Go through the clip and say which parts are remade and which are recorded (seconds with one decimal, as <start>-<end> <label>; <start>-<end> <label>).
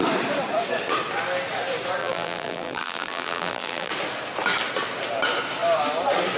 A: 0.0-2.0 recorded; 2.0-3.9 remade; 3.9-6.4 recorded